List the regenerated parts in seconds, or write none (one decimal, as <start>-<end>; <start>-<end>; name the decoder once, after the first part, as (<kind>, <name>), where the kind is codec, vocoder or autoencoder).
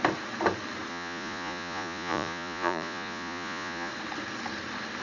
0.9-3.9 (vocoder, Vocos)